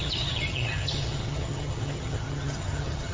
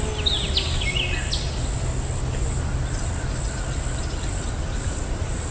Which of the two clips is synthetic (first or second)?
first